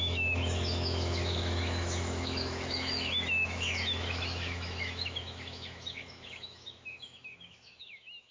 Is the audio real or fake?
fake